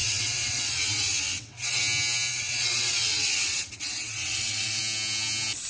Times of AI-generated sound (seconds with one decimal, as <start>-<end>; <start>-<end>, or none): 0.0-1.8; 2.3-4.8

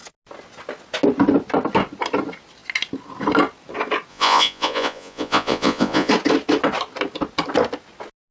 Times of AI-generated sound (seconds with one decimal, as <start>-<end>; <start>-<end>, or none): 4.1-6.1